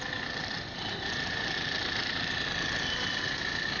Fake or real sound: real